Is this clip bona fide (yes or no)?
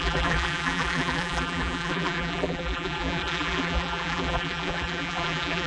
no